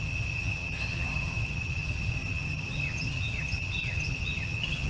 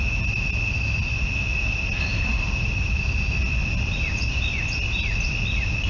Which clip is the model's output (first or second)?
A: first